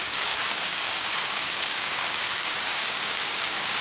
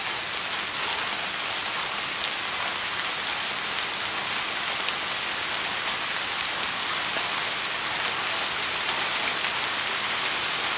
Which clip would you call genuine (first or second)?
second